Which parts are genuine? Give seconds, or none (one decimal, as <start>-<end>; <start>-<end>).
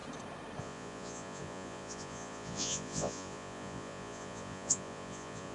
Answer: 0.0-0.6